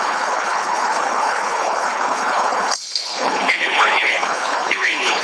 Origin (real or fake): fake